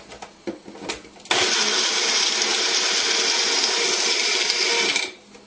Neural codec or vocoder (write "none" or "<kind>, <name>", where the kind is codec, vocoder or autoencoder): none